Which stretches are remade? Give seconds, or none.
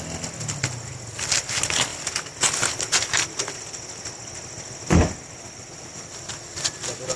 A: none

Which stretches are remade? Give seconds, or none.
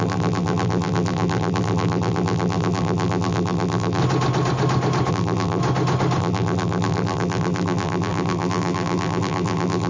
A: 0.0-4.0 (vocoder, BigVGAN v2); 5.1-5.6; 6.2-9.9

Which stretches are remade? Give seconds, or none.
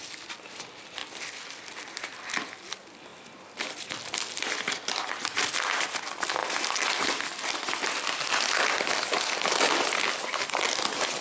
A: 1.0-1.7 (vocoder, BigVGAN v2); 3.1-3.9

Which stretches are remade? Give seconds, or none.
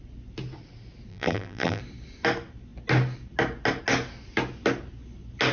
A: 1.1-1.8 (vocoder, BigVGAN v2)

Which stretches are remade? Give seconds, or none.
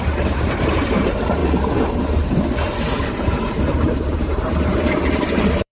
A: 0.0-1.4 (vocoder, BigVGAN v2); 3.0-5.7